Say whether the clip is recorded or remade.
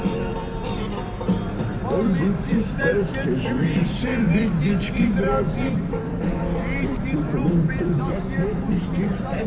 remade